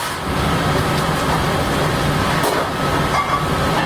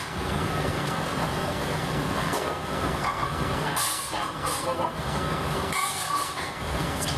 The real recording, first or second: first